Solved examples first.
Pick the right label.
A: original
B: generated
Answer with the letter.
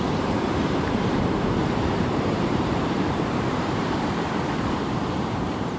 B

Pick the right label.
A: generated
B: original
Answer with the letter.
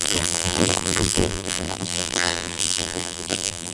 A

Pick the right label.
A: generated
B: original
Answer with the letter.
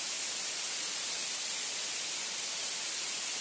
B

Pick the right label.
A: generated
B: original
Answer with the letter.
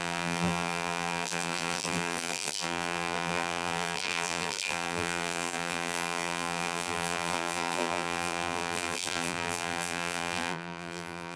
A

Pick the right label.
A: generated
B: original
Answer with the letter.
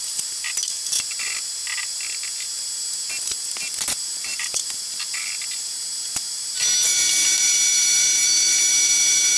B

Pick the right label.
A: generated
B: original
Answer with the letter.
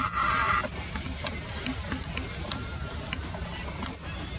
B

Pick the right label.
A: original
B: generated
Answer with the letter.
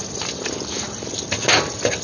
A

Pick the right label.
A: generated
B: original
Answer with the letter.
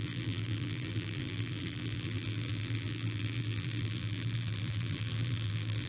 A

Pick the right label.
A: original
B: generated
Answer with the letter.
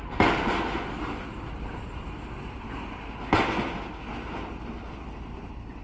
A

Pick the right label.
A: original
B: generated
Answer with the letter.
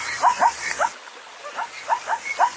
A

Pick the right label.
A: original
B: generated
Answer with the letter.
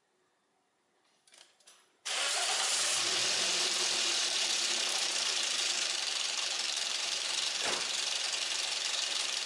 B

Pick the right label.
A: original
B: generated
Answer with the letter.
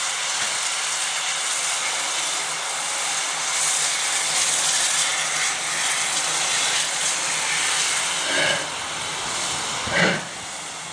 A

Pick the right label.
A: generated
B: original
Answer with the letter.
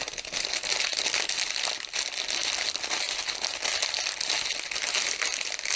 B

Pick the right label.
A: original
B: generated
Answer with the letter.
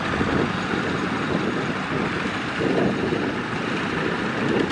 A